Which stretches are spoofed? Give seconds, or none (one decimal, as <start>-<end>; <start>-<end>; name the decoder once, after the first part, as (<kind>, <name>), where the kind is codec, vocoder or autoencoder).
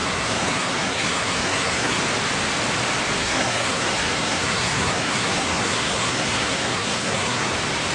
0.0-2.0 (codec, SNAC); 3.2-7.5